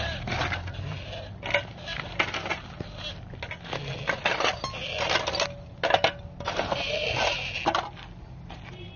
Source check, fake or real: real